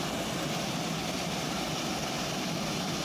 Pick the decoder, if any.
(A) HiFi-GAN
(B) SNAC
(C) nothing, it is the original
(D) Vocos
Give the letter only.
C